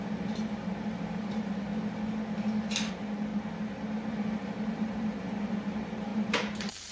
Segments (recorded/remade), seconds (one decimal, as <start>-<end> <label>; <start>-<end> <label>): 0.0-1.7 remade; 1.7-2.9 recorded; 2.9-3.3 remade; 3.3-4.1 recorded; 4.1-6.9 remade